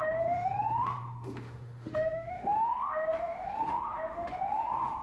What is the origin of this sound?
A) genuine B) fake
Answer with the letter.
B